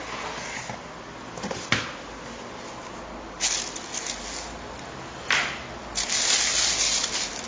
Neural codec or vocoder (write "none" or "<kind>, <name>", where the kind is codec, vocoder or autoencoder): none